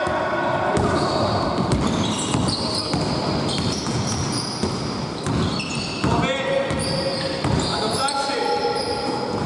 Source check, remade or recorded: recorded